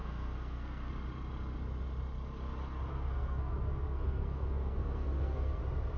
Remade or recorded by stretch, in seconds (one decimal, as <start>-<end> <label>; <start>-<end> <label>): 0.0-0.9 remade; 0.9-2.9 recorded; 2.9-5.6 remade; 5.6-6.0 recorded